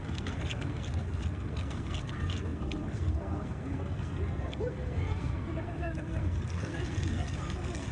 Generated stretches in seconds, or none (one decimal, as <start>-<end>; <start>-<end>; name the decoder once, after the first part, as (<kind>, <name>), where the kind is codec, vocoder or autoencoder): 0.0-7.9 (codec, SNAC)